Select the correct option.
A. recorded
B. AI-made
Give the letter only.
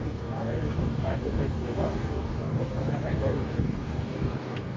B